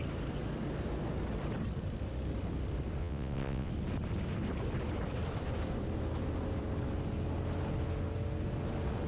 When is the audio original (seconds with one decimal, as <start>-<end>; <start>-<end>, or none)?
0.0-3.0; 3.7-9.1